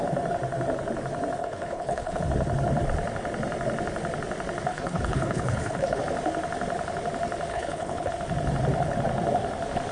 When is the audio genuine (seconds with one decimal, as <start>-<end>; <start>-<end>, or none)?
0.0-1.4; 2.2-4.7; 6.0-7.5; 8.1-9.9

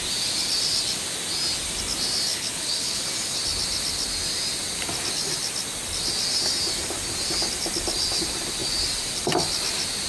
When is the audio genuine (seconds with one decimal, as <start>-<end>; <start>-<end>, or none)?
0.0-2.3; 3.0-10.1

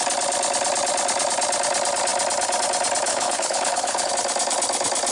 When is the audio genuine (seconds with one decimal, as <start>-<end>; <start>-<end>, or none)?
0.0-3.1; 4.1-5.1

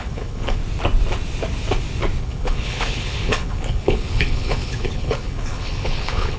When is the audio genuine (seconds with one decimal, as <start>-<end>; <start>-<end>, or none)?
0.6-2.2

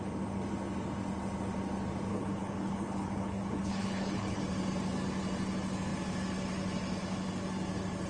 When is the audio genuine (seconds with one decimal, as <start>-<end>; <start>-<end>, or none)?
0.0-2.1; 4.4-8.1

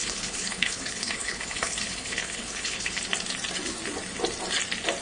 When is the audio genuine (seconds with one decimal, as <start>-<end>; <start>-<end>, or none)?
3.0-5.0